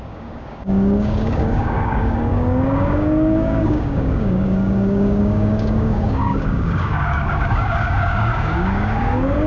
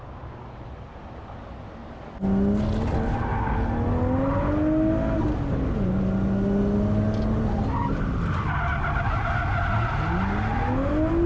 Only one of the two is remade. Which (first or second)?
first